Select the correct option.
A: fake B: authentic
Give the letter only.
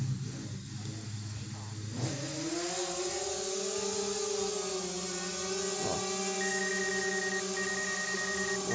B